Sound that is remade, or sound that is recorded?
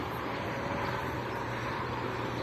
remade